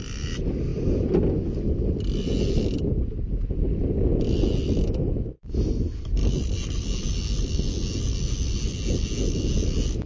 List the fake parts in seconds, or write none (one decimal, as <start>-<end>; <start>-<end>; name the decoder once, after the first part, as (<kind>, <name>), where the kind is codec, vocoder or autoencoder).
none